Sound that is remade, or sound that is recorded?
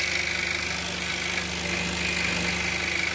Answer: recorded